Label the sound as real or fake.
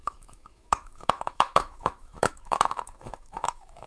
fake